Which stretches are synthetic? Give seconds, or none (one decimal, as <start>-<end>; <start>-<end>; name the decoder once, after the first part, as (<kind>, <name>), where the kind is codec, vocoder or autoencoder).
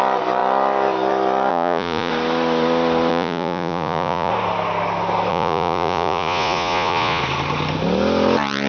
1.5-2.1 (vocoder, Vocos); 3.1-4.3; 5.3-7.2